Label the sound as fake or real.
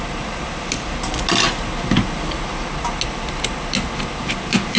real